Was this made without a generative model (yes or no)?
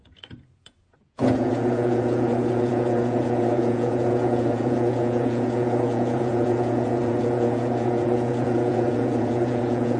no